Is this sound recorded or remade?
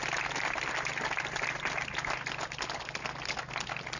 recorded